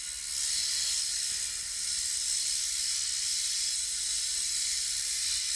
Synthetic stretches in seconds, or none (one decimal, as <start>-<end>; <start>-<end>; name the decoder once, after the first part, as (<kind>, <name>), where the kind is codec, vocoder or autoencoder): none